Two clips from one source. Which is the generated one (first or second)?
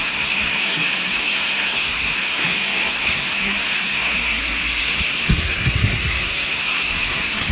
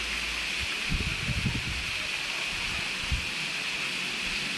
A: first